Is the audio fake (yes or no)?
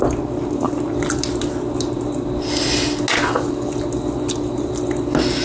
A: no